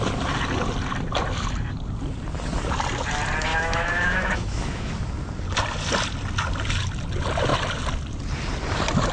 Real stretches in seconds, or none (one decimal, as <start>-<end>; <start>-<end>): 0.0-3.5; 4.9-9.1